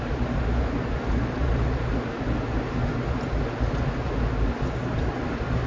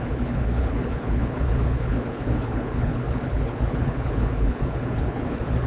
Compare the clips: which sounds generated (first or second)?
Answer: second